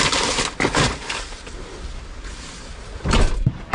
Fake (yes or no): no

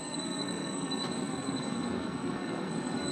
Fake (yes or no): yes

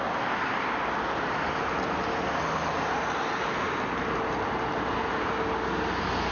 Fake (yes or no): no